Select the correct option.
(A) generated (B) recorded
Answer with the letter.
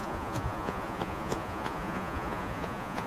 A